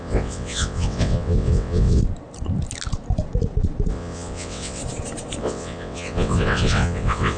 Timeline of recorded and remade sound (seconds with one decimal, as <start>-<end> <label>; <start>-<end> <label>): 0.0-2.0 remade; 2.0-3.9 recorded; 3.9-4.8 remade; 4.8-5.4 recorded; 5.4-7.4 remade